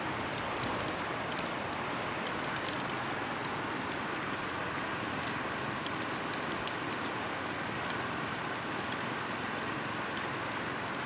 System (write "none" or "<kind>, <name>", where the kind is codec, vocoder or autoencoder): none